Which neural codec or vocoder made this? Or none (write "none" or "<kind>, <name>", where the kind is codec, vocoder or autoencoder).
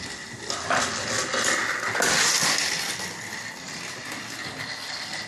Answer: none